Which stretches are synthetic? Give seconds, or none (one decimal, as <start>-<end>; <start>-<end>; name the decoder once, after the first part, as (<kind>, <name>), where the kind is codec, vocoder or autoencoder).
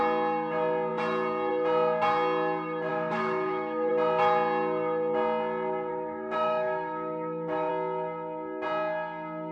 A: 2.9-3.9 (autoencoder, DAC-VAE); 5.9-7.7